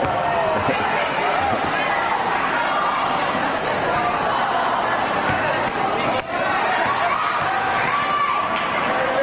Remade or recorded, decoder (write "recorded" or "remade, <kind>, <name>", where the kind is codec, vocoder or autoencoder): recorded